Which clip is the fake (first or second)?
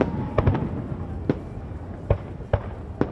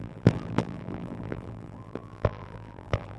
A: second